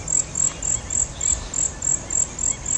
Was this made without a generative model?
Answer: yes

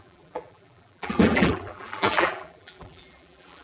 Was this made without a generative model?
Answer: no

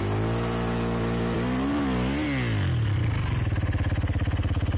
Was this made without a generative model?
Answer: yes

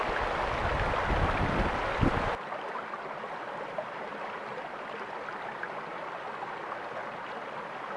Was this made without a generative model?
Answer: yes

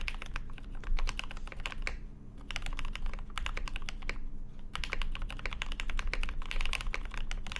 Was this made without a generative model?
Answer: yes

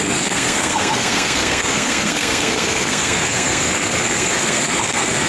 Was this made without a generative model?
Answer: no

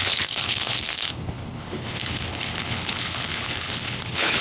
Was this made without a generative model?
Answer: no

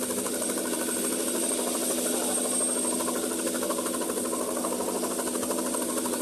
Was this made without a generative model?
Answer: yes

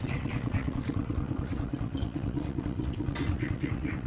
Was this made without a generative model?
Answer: no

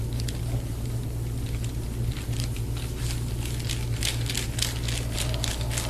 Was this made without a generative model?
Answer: yes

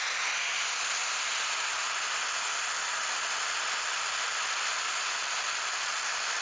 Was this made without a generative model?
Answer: yes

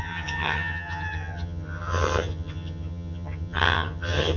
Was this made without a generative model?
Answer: no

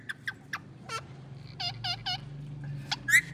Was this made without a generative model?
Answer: yes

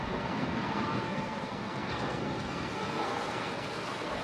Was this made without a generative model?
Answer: no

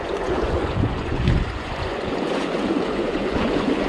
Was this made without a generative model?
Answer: no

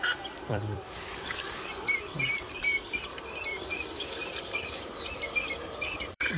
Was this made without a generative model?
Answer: no